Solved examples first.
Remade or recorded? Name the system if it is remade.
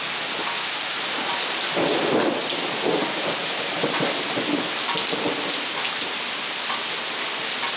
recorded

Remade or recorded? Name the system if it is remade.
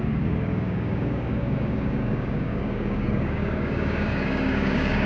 remade, codec, DAC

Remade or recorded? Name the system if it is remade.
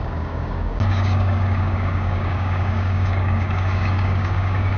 remade, codec, DAC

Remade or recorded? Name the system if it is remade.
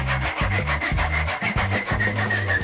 remade, codec, DAC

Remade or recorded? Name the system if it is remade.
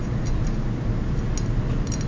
recorded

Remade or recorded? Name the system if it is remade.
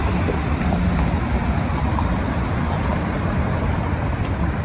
recorded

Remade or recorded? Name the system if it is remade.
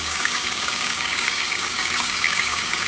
remade, codec, DAC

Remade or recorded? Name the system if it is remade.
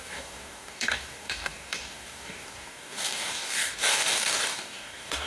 remade, codec, DAC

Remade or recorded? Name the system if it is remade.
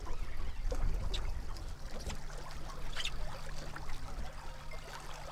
recorded